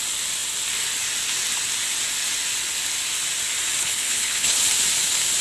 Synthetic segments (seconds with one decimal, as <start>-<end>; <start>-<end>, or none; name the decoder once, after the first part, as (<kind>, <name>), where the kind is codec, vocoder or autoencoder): 3.8-4.6 (codec, HILCodec)